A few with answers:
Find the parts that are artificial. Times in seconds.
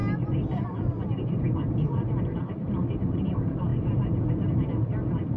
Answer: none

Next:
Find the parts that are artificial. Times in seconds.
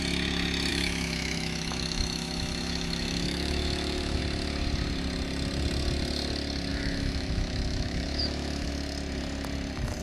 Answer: 0.7-4.2 (autoencoder, DAC-VAE); 6.7-8.7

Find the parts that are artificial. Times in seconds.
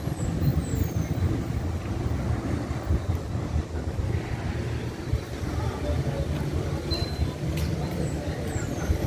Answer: none